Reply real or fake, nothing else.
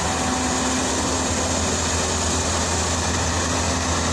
real